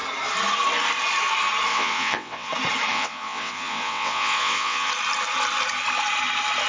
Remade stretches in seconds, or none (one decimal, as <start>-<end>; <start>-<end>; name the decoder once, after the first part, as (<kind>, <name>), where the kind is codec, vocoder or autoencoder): 1.7-2.5 (vocoder, WaveNeXt); 2.9-4.9